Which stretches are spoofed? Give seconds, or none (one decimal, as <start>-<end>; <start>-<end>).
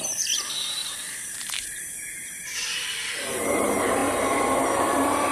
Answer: 0.0-2.4; 3.1-5.3